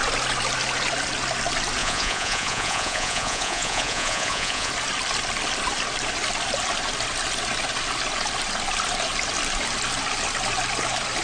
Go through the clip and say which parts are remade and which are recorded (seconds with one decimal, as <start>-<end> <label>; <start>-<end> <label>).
0.0-1.8 recorded; 1.8-4.7 remade; 4.7-11.2 recorded